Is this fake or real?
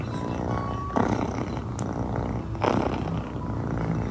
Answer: real